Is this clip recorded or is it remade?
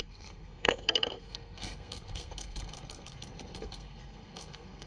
remade